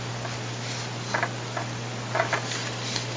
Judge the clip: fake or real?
real